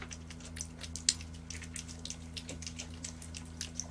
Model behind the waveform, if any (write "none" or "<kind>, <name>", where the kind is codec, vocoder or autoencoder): none